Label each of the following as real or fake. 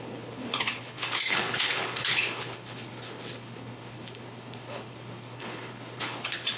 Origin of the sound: fake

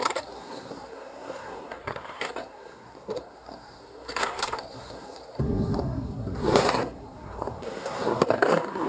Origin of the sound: fake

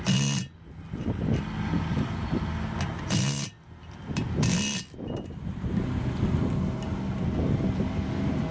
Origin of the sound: real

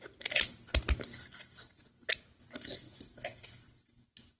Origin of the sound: real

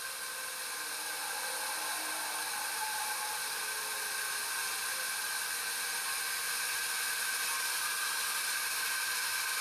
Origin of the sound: real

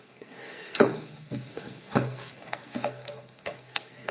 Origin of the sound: fake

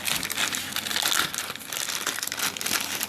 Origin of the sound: real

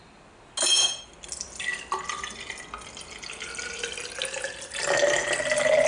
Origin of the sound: real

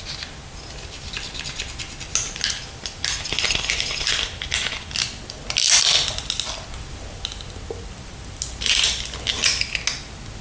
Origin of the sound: real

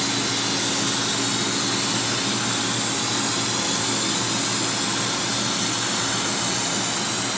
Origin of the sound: real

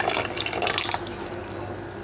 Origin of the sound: real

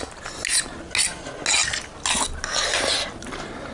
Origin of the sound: real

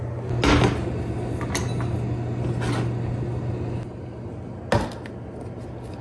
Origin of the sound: real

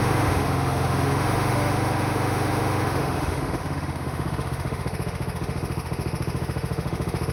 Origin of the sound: fake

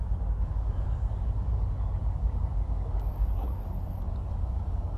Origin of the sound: fake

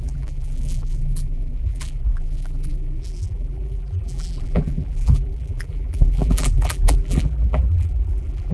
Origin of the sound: fake